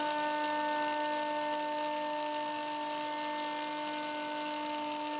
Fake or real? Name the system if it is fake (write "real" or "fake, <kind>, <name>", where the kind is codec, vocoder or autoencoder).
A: real